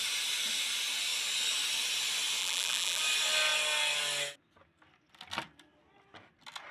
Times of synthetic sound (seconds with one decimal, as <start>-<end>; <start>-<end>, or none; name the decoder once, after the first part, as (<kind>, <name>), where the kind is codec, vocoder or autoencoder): 2.4-3.0 (vocoder, BigVGAN v2)